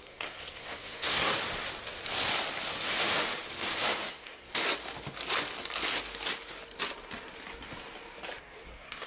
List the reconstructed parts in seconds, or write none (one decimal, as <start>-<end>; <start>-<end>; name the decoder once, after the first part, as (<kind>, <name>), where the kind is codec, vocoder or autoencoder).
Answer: 0.0-1.3 (codec, SNAC); 4.1-4.5; 8.4-9.1